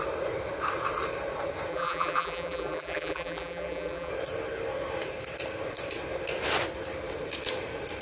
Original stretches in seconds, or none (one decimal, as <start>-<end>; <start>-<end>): 0.0-1.7; 4.1-8.0